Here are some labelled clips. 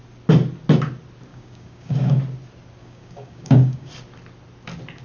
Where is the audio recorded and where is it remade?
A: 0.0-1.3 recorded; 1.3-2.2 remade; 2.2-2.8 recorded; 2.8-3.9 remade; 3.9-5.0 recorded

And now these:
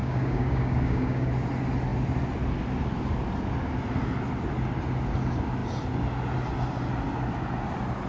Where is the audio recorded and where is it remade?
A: 0.0-1.3 remade; 1.3-8.1 recorded

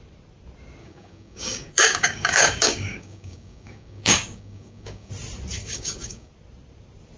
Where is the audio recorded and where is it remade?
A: 0.0-0.8 recorded; 0.8-5.1 remade; 5.1-5.6 recorded; 5.6-6.3 remade; 6.3-7.2 recorded

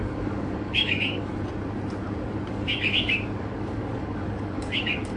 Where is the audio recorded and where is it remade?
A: 0.0-1.3 remade; 1.3-2.5 recorded; 2.5-5.2 remade